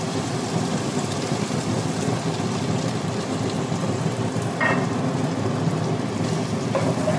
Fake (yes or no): no